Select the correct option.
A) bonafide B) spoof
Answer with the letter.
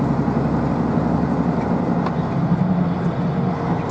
A